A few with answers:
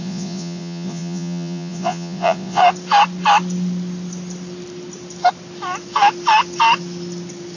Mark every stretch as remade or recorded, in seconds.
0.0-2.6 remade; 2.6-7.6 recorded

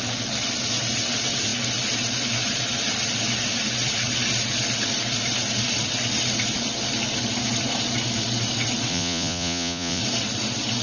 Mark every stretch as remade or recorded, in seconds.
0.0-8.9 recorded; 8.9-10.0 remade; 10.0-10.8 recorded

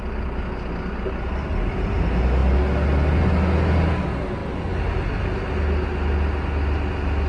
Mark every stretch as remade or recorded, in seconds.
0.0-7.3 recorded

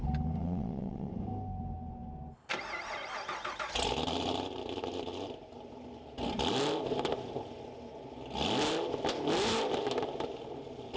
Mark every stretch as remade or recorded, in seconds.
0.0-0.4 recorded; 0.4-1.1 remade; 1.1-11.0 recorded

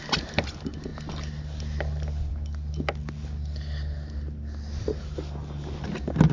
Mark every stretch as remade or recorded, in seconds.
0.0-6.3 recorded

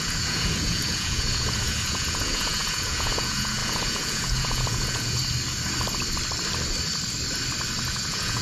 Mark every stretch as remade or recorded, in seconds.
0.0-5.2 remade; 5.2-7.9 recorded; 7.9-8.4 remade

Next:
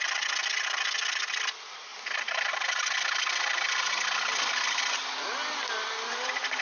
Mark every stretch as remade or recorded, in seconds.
0.0-6.6 recorded